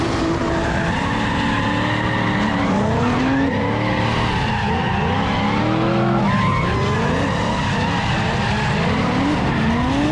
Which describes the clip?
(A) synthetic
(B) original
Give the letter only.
B